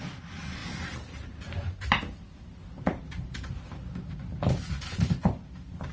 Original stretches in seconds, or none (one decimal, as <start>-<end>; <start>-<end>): 0.0-0.6; 3.5-5.9